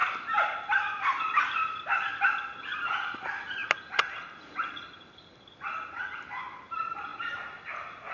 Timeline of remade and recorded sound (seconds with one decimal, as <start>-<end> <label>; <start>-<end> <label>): 0.0-8.1 recorded